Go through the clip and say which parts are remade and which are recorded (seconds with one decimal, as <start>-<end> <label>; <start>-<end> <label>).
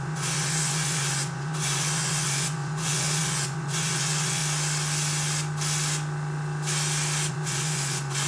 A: 0.0-4.4 remade; 4.4-7.3 recorded; 7.3-8.3 remade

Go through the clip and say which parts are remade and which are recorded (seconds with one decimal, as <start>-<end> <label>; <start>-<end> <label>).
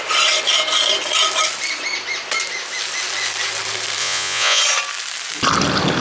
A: 0.0-4.0 recorded; 4.0-4.6 remade; 4.6-6.0 recorded